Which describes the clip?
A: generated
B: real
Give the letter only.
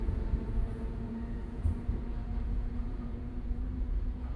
A